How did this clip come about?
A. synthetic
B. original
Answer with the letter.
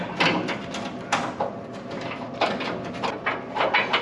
B